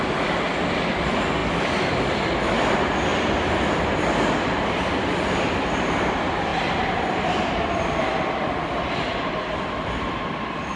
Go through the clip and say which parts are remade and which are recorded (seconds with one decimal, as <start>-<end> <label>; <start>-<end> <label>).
0.0-10.8 recorded